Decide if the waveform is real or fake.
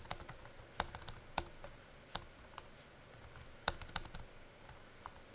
real